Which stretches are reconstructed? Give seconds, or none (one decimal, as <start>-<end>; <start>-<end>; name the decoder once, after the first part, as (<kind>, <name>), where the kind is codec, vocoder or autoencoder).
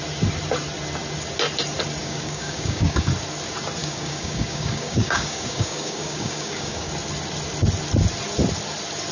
2.0-3.1 (codec, DAC); 3.8-6.9